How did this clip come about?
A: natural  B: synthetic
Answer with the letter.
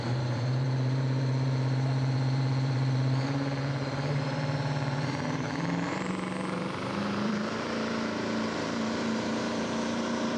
B